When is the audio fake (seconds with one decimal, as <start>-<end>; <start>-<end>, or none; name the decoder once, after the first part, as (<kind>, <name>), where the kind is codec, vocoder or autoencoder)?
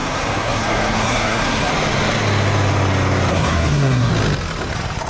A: 0.0-1.7 (codec, SNAC); 3.3-4.1